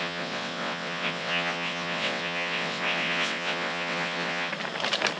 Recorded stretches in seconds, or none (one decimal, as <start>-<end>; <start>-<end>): 4.5-5.2